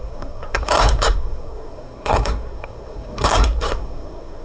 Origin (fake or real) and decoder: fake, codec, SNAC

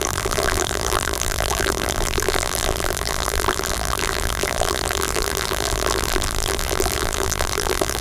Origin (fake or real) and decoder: fake, vocoder, BigVGAN v2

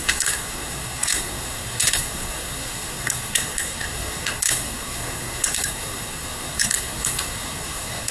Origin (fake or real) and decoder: fake, codec, SNAC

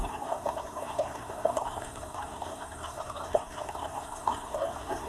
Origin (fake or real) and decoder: fake, codec, SNAC